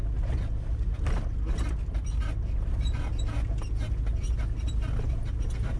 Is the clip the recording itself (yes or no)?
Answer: yes